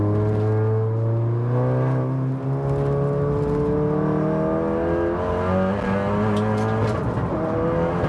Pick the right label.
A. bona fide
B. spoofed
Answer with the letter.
A